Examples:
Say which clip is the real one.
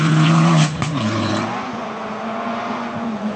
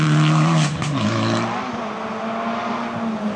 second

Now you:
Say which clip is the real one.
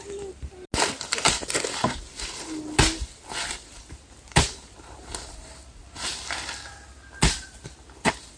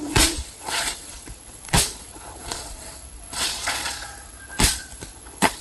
first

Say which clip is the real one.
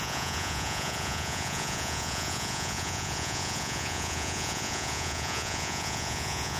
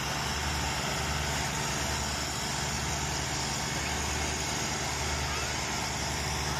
second